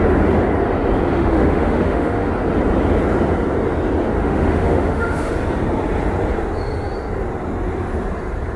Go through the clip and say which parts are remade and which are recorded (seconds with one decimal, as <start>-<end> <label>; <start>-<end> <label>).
0.0-1.1 recorded; 1.1-2.3 remade; 2.3-4.2 recorded; 4.2-5.3 remade; 5.3-8.6 recorded